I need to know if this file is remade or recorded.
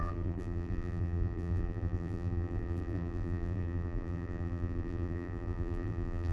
remade